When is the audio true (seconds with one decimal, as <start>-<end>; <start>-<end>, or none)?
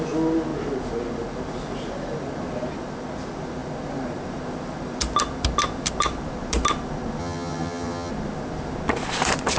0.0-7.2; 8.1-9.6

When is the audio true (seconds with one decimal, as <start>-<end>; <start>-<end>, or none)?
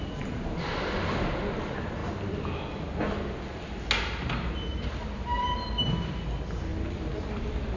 0.0-7.8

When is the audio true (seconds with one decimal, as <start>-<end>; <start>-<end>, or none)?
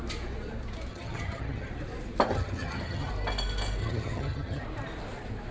0.0-0.9; 1.7-2.3; 3.1-3.8; 4.6-5.5